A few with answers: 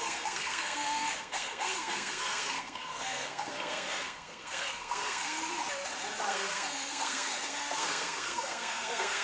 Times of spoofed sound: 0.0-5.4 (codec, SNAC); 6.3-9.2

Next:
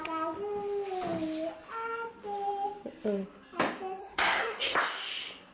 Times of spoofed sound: 4.0-4.8 (codec, SNAC)

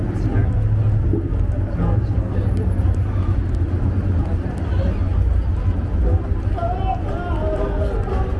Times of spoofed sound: none

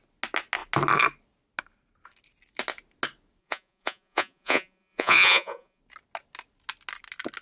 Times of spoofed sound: 3.4-5.8 (vocoder, Vocos)

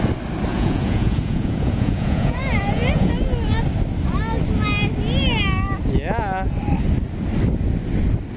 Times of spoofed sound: 0.5-3.1 (vocoder, Vocos)